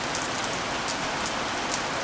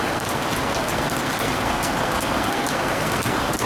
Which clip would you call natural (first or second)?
first